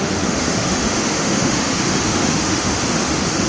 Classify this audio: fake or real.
fake